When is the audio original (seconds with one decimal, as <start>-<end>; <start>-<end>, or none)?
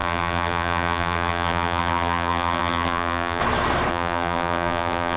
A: 3.4-3.9